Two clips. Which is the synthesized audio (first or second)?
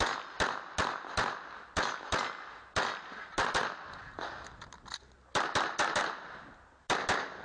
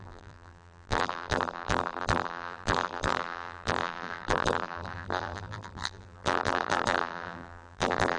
second